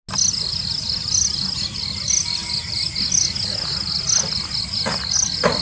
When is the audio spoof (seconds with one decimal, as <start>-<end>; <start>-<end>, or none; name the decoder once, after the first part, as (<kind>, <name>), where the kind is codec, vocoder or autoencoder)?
none